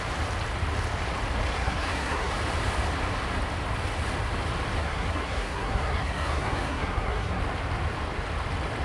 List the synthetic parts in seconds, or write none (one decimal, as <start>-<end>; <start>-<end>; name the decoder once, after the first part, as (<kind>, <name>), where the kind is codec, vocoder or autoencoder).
1.6-2.3 (codec, SNAC); 4.8-7.4